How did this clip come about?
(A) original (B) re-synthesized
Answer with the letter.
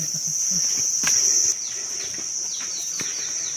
A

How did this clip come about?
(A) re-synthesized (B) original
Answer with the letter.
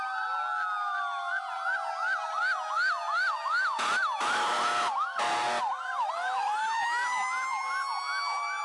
B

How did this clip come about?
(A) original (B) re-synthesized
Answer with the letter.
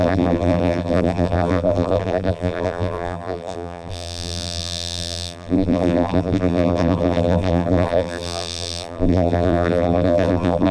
B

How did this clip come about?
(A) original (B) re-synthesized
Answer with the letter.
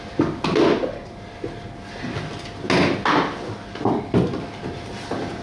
A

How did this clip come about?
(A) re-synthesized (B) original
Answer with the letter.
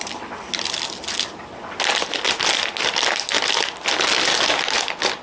B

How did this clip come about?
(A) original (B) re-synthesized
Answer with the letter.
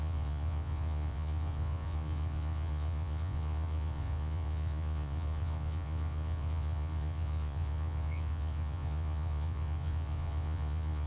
B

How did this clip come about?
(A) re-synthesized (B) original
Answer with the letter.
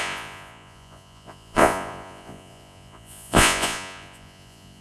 A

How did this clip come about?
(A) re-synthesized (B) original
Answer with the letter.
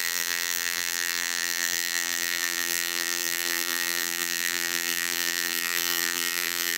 A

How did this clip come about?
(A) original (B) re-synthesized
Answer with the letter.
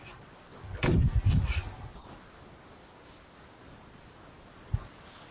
A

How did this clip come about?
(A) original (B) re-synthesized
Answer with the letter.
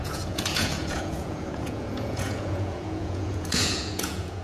B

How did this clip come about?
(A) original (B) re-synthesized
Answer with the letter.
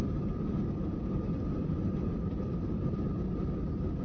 A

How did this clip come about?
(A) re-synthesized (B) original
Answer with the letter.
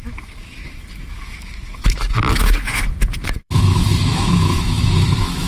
A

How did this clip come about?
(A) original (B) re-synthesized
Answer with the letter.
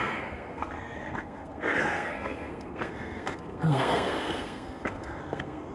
B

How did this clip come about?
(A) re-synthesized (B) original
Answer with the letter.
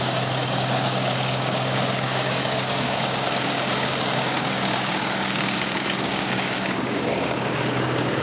A